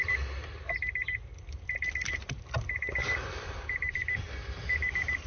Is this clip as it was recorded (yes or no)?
yes